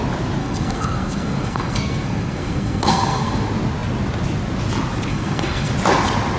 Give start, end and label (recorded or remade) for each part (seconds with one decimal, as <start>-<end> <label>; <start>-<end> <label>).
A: 0.0-0.4 recorded; 0.4-3.4 remade; 3.4-5.1 recorded; 5.1-5.7 remade; 5.7-6.4 recorded